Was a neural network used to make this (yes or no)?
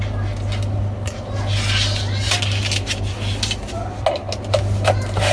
no